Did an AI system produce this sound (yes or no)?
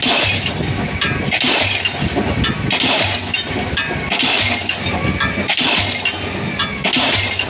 no